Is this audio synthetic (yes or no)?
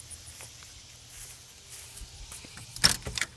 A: no